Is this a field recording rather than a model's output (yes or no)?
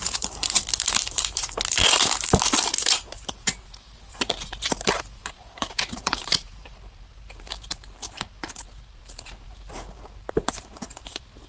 no